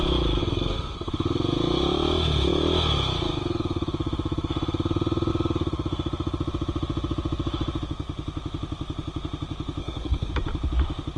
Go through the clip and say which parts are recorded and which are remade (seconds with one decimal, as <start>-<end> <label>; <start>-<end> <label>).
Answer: 0.0-0.4 recorded; 0.4-1.1 remade; 1.1-9.8 recorded; 9.8-10.3 remade; 10.3-11.2 recorded